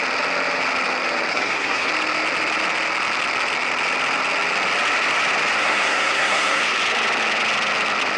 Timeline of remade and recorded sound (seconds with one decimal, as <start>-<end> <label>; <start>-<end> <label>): 0.0-1.3 recorded; 1.3-1.9 remade; 1.9-5.6 recorded; 5.6-6.6 remade; 6.6-8.2 recorded

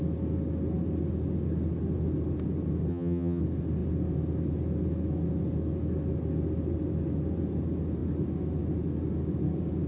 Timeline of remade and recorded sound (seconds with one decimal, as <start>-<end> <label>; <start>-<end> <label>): 0.0-2.9 recorded; 2.9-3.4 remade; 3.4-9.9 recorded

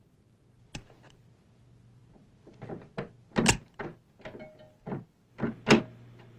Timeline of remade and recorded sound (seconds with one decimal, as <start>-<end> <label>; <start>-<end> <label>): 0.0-6.4 recorded

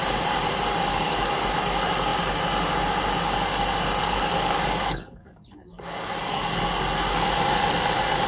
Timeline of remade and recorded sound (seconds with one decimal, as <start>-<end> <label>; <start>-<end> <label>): 0.0-0.9 recorded; 0.9-1.5 remade; 1.5-4.0 recorded; 4.0-6.1 remade; 6.1-8.3 recorded